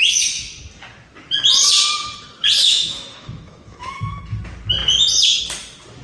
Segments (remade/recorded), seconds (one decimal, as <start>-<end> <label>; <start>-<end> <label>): 0.0-0.5 remade; 0.5-2.6 recorded; 2.6-4.2 remade; 4.2-6.0 recorded